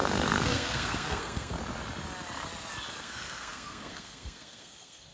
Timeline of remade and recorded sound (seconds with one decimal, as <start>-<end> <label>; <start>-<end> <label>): 0.0-1.6 remade; 1.6-3.0 recorded; 3.0-5.1 remade